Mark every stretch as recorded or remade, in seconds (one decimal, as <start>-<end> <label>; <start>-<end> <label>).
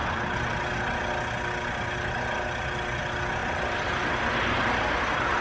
0.0-3.4 recorded; 3.4-3.9 remade; 3.9-5.4 recorded